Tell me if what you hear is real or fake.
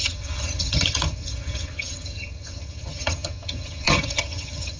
fake